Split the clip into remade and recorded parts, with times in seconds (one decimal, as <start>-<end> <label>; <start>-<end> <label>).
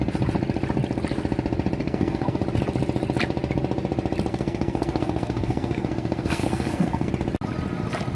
0.0-1.8 recorded; 1.8-2.4 remade; 2.4-4.3 recorded; 4.3-7.1 remade; 7.1-8.2 recorded